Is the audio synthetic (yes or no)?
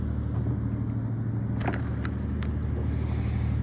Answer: no